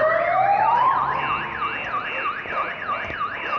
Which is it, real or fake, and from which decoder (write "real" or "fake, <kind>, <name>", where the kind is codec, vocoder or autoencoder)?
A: real